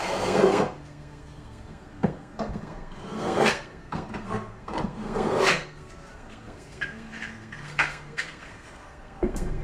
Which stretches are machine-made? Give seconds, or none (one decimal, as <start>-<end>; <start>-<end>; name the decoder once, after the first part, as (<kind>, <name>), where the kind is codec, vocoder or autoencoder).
0.0-9.6 (codec, SNAC)